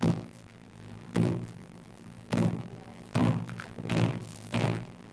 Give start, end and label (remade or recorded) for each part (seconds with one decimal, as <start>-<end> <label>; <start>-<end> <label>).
0.0-5.1 remade